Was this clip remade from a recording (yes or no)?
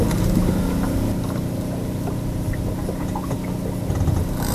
no